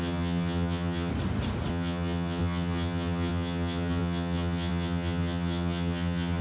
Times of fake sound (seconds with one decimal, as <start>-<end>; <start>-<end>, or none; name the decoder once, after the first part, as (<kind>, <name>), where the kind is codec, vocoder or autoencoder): 0.0-1.1 (vocoder, HiFi-GAN); 1.7-6.4